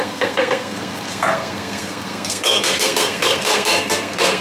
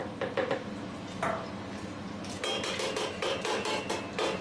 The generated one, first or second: first